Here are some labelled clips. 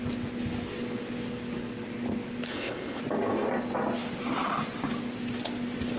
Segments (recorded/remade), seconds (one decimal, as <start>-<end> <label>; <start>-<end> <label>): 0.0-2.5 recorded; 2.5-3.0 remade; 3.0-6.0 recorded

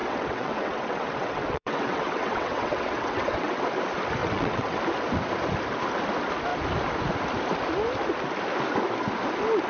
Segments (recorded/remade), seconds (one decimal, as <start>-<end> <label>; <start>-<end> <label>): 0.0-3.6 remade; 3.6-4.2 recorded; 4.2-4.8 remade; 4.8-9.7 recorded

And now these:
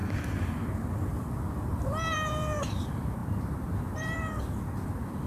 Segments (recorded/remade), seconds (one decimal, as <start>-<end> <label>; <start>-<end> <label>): 0.0-2.6 remade; 2.6-3.2 recorded; 3.2-4.4 remade; 4.4-5.3 recorded

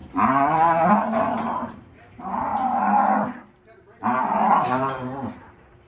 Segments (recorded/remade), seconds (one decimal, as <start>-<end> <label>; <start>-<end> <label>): 0.0-0.9 recorded; 0.9-2.5 remade; 2.5-3.5 recorded; 3.5-5.9 remade

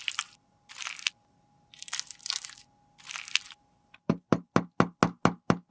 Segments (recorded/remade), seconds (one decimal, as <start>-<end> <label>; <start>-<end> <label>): 0.0-5.7 recorded

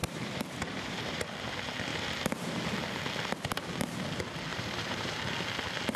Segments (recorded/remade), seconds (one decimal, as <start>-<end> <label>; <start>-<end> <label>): 0.0-1.2 remade; 1.2-1.9 recorded; 1.9-2.6 remade; 2.6-4.5 recorded; 4.5-5.2 remade; 5.2-6.0 recorded

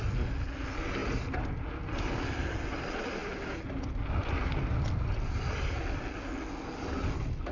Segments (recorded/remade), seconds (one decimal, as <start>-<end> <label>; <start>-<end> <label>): 0.0-7.5 recorded